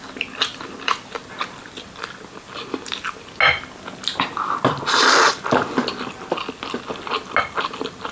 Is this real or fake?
real